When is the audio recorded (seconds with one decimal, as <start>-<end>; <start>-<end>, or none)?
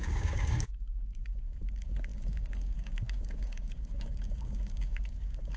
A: none